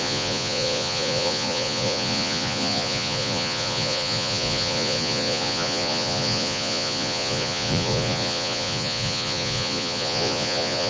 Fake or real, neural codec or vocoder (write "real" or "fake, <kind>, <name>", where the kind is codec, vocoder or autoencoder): fake, vocoder, Vocos